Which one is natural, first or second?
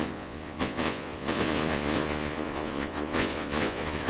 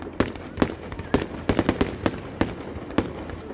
second